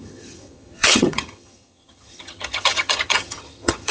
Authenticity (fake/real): fake